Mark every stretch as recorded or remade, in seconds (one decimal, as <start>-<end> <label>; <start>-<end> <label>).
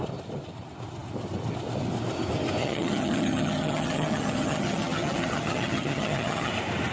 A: 0.0-2.6 recorded; 2.6-6.5 remade; 6.5-6.9 recorded